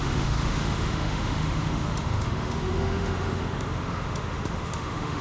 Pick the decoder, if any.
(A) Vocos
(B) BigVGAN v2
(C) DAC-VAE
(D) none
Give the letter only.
C